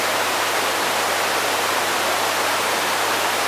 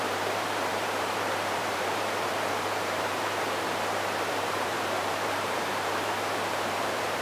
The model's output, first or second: second